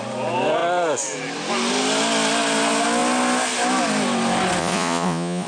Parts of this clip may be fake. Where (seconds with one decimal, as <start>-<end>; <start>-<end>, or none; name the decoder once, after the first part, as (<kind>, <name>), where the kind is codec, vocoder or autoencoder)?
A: 4.6-5.5 (vocoder, Vocos)